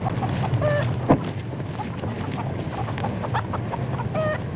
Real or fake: real